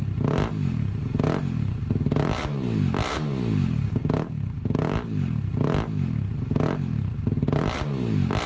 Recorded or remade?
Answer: recorded